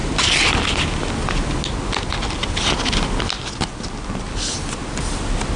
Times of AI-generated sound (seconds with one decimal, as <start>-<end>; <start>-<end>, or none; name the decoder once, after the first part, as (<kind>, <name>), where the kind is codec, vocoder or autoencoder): none